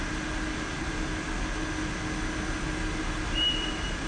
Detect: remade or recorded recorded